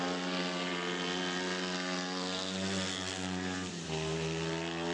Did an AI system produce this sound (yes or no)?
no